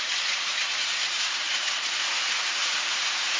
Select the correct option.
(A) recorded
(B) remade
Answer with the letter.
B